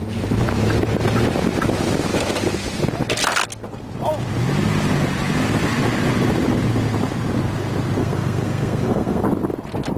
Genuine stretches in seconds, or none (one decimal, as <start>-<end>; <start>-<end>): 0.0-8.0; 9.2-10.0